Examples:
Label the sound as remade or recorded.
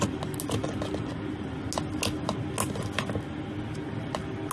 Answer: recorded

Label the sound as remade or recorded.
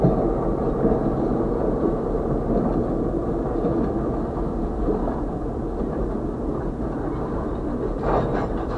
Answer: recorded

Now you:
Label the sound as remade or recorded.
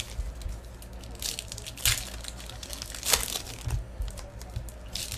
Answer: recorded